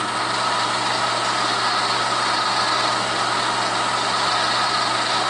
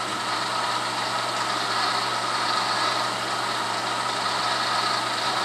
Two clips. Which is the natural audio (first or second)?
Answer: first